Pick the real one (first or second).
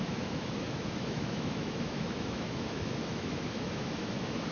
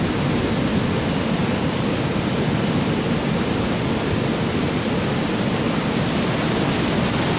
second